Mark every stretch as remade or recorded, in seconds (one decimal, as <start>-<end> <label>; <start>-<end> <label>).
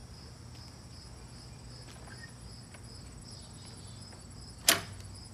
0.0-5.3 recorded